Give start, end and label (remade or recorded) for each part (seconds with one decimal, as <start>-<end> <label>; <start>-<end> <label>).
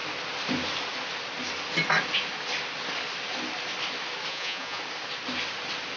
0.0-4.3 recorded; 4.3-4.8 remade; 4.8-6.0 recorded